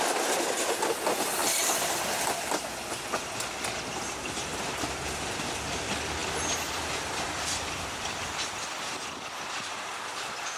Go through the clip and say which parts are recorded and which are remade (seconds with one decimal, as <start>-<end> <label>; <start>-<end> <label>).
0.0-1.4 recorded; 1.4-3.0 remade; 3.0-6.2 recorded; 6.2-8.7 remade; 8.7-10.6 recorded